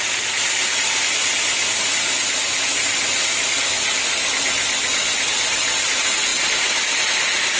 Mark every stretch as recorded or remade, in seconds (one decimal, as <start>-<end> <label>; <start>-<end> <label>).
0.0-7.6 recorded